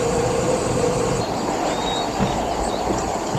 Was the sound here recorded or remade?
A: recorded